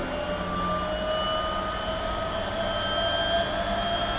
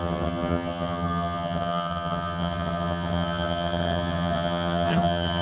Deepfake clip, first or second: second